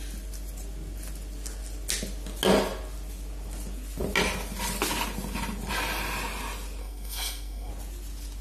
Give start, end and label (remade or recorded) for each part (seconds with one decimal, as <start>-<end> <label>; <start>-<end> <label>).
0.0-6.8 recorded; 6.8-7.7 remade; 7.7-8.4 recorded